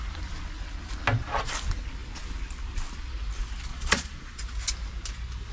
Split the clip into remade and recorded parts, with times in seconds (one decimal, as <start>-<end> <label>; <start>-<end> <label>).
0.0-3.7 recorded; 3.7-4.4 remade; 4.4-5.5 recorded